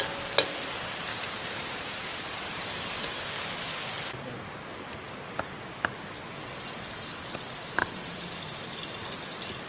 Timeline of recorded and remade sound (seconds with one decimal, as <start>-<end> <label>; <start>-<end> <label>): 0.0-1.1 recorded; 1.1-3.2 remade; 3.2-7.8 recorded; 7.8-8.3 remade; 8.3-9.7 recorded